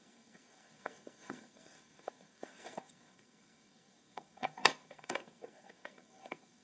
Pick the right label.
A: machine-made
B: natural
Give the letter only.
A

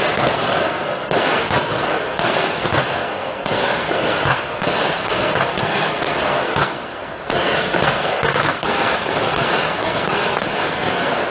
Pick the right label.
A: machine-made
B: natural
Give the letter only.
A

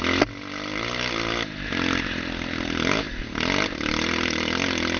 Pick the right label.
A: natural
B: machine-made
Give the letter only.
A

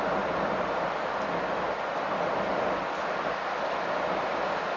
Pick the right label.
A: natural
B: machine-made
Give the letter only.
A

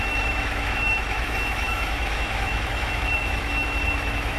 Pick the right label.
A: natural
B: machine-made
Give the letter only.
B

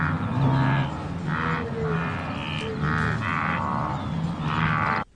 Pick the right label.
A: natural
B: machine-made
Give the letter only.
A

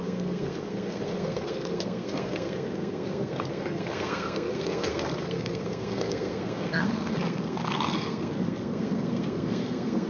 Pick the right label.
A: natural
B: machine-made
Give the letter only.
B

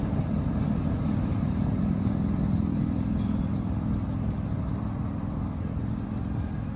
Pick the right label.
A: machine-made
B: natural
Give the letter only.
B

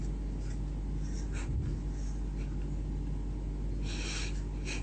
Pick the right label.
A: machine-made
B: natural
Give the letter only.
B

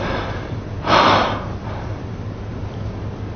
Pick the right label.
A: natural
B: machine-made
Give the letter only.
B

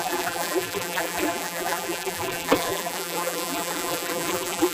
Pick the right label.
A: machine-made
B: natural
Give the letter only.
A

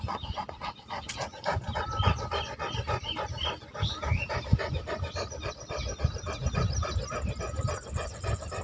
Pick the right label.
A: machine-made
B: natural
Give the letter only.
B